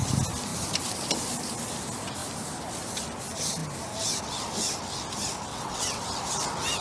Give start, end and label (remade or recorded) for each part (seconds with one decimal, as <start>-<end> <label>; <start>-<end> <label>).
0.0-5.5 recorded; 5.5-6.0 remade; 6.0-6.8 recorded